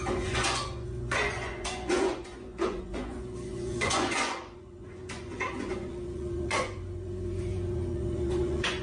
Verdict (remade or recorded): remade